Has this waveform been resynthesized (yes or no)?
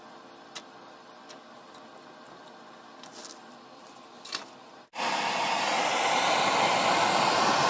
no